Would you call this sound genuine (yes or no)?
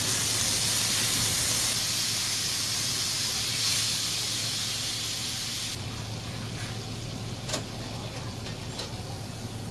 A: yes